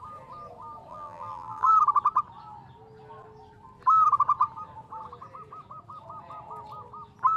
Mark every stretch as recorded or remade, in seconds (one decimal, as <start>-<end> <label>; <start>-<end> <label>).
0.0-0.9 recorded; 0.9-1.7 remade; 1.7-7.4 recorded

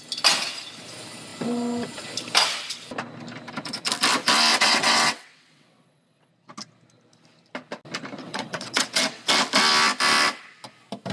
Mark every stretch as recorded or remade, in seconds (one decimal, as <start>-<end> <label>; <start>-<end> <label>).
0.0-4.5 recorded; 4.5-6.3 remade; 6.3-8.2 recorded; 8.2-9.3 remade; 9.3-11.1 recorded

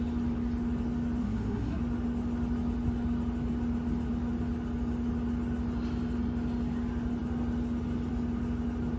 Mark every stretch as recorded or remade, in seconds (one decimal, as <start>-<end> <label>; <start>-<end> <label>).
0.0-1.2 recorded; 1.2-1.8 remade; 1.8-9.0 recorded

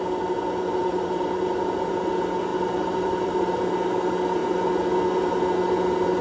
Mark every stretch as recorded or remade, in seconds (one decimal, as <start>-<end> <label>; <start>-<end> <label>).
0.0-0.8 recorded; 0.8-2.1 remade; 2.1-2.5 recorded; 2.5-3.6 remade; 3.6-6.2 recorded

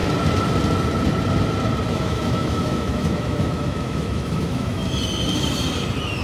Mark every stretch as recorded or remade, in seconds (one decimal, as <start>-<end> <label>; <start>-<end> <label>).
0.0-1.9 recorded; 1.9-4.8 remade; 4.8-6.2 recorded